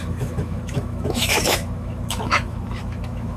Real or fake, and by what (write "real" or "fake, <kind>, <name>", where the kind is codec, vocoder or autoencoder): fake, autoencoder, DAC-VAE